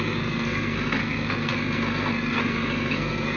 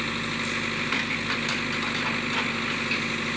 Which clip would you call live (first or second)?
second